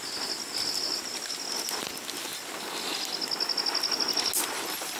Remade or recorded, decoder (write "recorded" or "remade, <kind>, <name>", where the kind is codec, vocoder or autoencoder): recorded